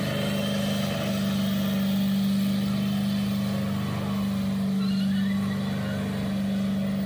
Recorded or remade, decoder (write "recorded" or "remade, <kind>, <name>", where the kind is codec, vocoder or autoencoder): recorded